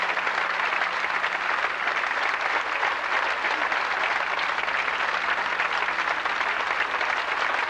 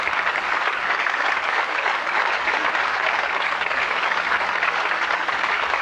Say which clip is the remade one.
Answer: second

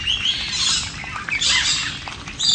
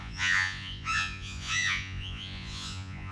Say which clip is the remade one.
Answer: second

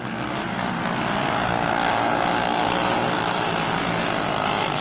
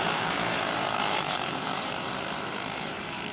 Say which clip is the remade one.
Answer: second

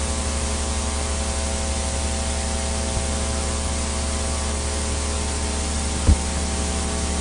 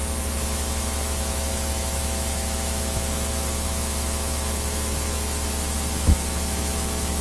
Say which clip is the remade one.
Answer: second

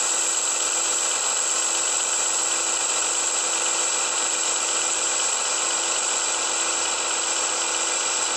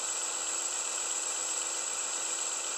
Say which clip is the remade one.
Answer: second